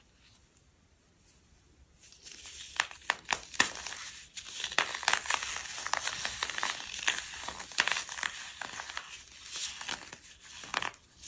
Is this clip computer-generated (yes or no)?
no